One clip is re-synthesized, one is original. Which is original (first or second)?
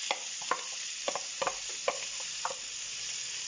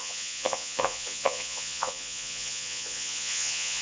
first